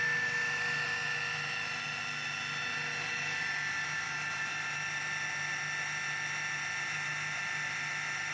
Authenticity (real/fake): real